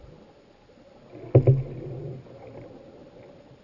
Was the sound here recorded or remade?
recorded